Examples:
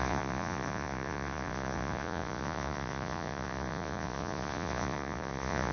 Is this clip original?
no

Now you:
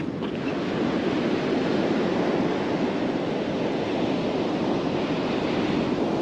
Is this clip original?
yes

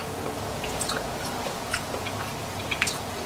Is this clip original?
no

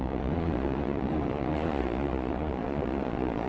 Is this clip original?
no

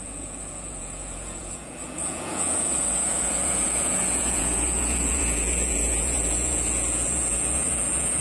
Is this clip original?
no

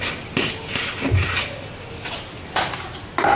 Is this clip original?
yes